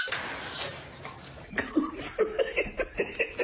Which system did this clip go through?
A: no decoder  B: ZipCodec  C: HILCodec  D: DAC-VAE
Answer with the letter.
A